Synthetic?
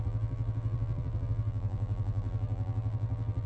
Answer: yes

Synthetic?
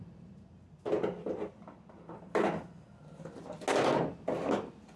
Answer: no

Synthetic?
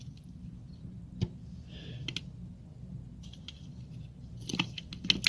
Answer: no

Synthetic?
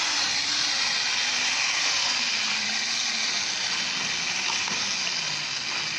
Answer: no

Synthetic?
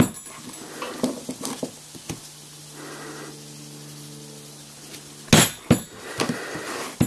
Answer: no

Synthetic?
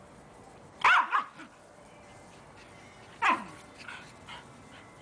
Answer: no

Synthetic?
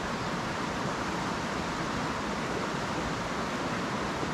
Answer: no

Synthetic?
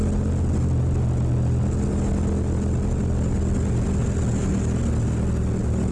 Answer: no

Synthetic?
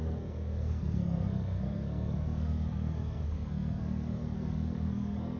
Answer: yes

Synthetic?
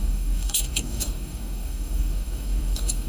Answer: yes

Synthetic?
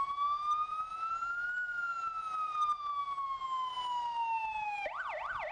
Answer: no